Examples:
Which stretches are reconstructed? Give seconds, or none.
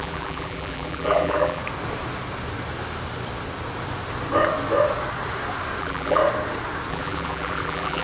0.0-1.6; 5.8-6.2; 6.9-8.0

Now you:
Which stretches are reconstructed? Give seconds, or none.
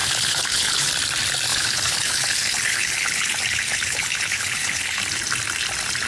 0.0-0.9; 1.5-5.0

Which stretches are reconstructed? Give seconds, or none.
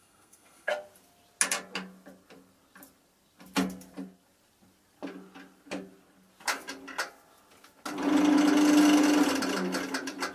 0.0-0.7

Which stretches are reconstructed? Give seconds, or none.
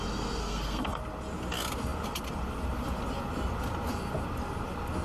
0.4-1.0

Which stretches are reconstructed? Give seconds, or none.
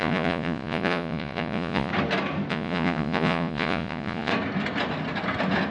0.0-1.9; 2.5-4.3